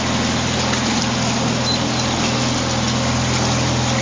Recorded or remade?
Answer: recorded